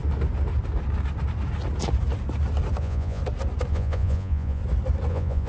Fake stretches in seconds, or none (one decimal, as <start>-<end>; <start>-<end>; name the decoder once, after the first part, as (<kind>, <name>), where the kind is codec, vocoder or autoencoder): 2.8-3.2 (vocoder, Vocos); 3.7-4.6; 5.1-5.5